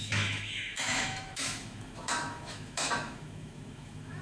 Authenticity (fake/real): fake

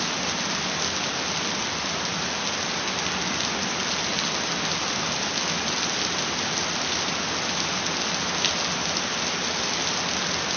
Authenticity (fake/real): real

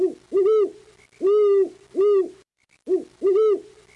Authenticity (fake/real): real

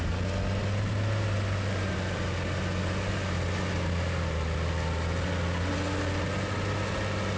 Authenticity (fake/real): real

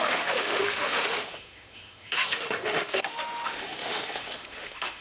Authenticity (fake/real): fake